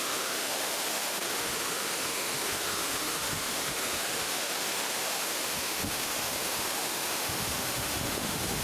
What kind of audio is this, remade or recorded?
remade